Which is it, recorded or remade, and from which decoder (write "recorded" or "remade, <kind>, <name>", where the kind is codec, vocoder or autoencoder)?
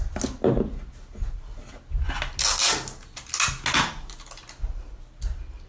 recorded